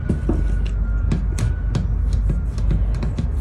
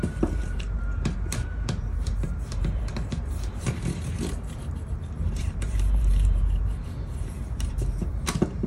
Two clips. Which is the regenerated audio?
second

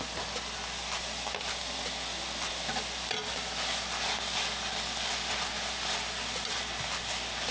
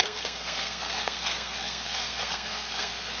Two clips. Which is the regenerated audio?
second